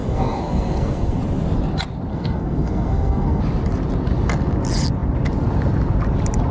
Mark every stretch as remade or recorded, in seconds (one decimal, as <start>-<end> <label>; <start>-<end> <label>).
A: 0.0-1.2 remade; 1.2-2.1 recorded; 2.1-3.4 remade; 3.4-6.5 recorded